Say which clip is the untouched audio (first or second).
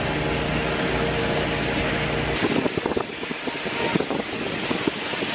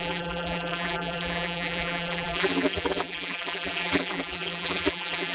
first